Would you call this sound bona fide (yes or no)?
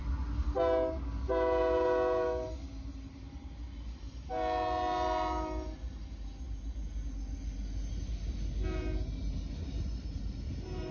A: yes